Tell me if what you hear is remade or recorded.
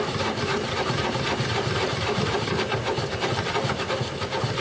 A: remade